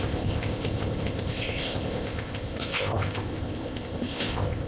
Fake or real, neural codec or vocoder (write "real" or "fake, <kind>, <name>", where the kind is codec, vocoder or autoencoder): fake, codec, ZipCodec